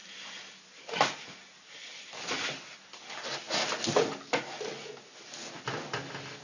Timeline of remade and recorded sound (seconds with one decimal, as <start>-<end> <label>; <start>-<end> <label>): 0.0-6.4 recorded

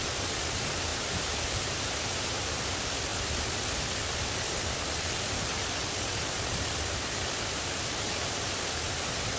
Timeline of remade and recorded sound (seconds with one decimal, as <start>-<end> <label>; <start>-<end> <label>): 0.0-0.9 recorded; 0.9-2.6 remade; 2.6-9.4 recorded

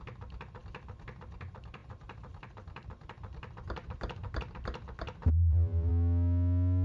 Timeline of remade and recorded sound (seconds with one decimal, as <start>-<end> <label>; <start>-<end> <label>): 0.0-1.8 recorded; 1.8-4.4 remade; 4.4-5.2 recorded; 5.2-5.9 remade; 5.9-6.8 recorded